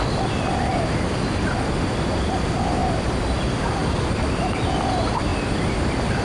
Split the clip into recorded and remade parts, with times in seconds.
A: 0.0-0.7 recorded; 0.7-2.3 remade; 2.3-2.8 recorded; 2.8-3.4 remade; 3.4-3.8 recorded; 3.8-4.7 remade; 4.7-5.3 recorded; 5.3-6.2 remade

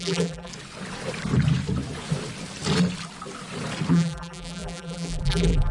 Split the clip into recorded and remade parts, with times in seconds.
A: 0.0-0.5 remade; 0.5-3.9 recorded; 3.9-5.7 remade

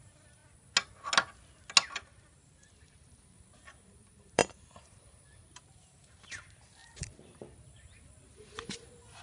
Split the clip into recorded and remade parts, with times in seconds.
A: 0.0-0.4 remade; 0.4-1.9 recorded; 1.9-9.2 remade

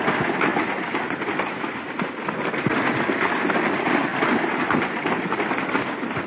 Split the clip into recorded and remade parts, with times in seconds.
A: 0.0-6.3 recorded

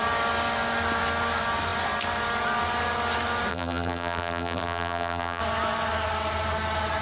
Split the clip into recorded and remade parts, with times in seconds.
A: 0.0-3.5 recorded; 3.5-5.4 remade; 5.4-7.0 recorded

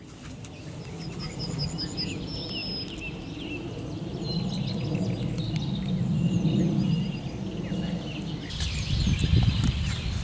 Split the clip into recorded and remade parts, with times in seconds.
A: 0.0-10.2 recorded